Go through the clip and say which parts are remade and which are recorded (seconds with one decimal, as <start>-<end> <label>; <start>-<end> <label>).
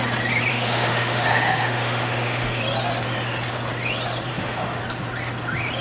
0.0-0.5 recorded; 0.5-2.6 remade; 2.6-4.3 recorded; 4.3-4.8 remade; 4.8-5.8 recorded